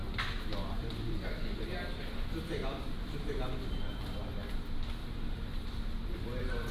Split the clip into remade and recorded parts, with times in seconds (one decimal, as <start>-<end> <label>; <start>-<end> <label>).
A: 0.0-4.0 remade; 4.0-5.0 recorded; 5.0-6.7 remade